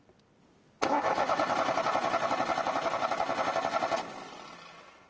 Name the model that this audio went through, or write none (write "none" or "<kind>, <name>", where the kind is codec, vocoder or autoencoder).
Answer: none